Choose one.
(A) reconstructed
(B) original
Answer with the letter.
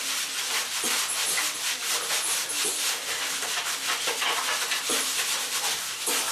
A